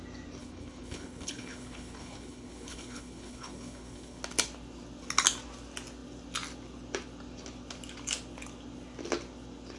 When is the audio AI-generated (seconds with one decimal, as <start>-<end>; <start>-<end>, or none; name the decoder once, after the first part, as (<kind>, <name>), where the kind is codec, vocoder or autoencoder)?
0.4-4.2 (codec, HILCodec)